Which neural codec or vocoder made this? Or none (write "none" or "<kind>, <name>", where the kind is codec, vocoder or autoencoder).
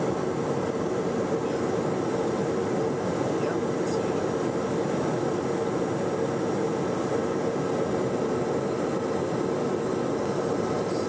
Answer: none